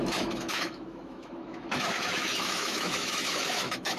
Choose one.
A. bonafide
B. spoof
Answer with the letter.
B